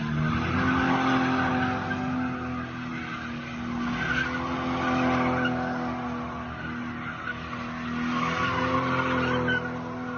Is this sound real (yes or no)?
yes